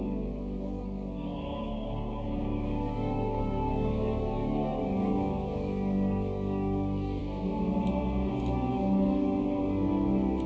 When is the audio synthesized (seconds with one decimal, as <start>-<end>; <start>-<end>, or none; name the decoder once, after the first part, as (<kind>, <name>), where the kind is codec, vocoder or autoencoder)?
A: 0.0-7.2 (codec, DAC); 8.3-9.6